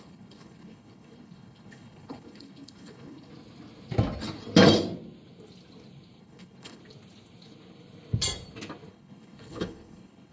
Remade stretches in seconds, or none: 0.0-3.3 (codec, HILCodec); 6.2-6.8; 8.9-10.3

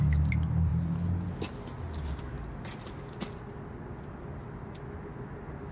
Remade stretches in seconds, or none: none

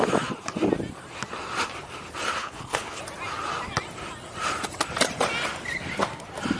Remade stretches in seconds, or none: 2.4-3.0 (codec, HILCodec)

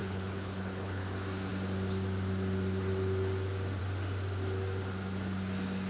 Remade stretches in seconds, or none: 0.0-1.0 (codec, HILCodec)